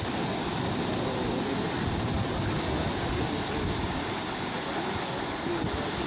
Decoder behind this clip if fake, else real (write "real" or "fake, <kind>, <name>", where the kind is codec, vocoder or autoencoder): real